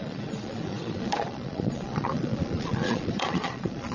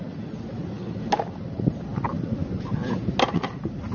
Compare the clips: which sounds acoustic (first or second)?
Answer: second